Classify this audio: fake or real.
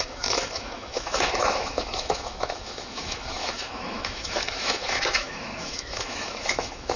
fake